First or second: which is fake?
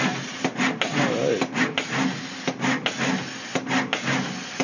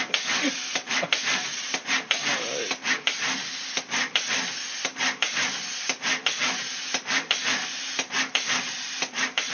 second